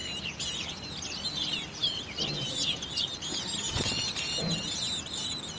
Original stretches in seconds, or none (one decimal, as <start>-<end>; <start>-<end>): 0.0-5.6